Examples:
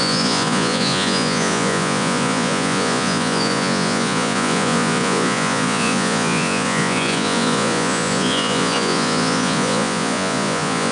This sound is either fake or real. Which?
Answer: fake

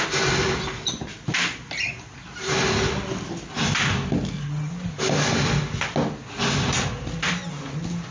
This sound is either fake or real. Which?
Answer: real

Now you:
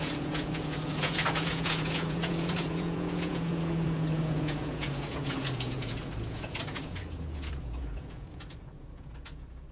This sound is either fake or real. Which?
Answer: fake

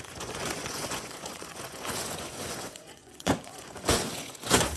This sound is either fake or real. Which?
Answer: fake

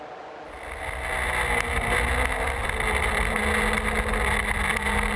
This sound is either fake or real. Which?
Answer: real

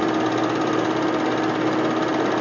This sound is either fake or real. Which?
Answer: real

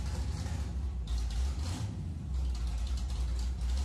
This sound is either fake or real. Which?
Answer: real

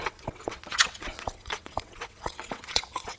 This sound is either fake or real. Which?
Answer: fake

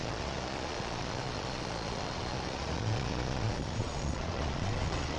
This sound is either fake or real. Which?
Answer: fake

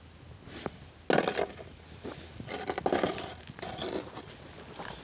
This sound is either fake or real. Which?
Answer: real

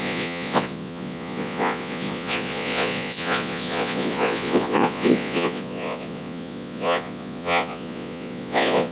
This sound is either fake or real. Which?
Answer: fake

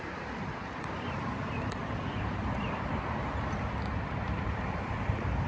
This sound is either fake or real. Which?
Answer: fake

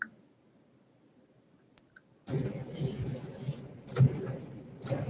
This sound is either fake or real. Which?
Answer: real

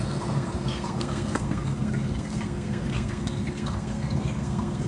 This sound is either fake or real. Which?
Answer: fake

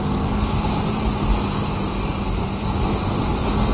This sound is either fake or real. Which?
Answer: real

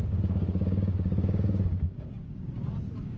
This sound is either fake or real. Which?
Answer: fake